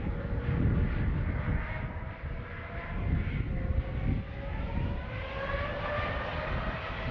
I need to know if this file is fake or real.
real